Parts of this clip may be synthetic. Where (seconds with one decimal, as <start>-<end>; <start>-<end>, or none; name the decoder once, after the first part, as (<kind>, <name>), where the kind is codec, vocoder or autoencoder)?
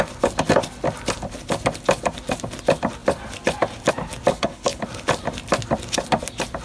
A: 4.3-4.8 (codec, HILCodec)